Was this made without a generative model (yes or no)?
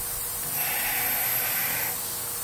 yes